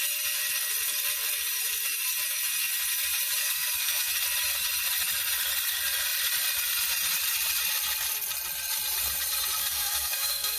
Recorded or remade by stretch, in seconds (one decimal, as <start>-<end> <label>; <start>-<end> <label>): 0.0-3.4 recorded; 3.4-4.1 remade; 4.1-9.6 recorded; 9.6-10.6 remade